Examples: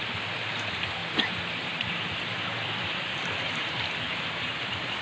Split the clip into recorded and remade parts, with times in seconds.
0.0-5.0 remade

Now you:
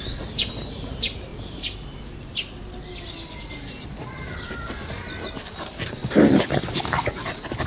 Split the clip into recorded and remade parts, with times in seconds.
0.0-1.3 remade; 1.3-5.3 recorded; 5.3-6.0 remade; 6.0-6.7 recorded; 6.7-7.7 remade

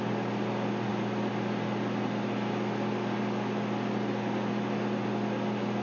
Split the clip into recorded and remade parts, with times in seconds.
0.0-5.8 recorded